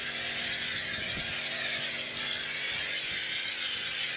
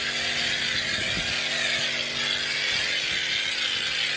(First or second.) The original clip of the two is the second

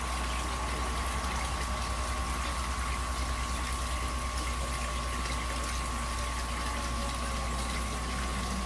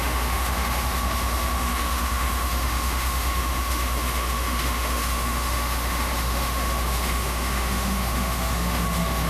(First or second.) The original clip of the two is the first